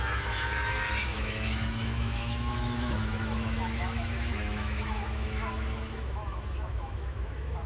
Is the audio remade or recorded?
remade